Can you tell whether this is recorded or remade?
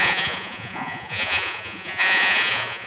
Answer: remade